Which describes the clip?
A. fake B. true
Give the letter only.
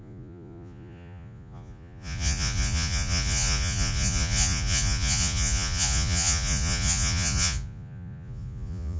A